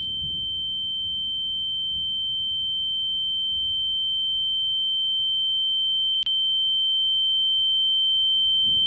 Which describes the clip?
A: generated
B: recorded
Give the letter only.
B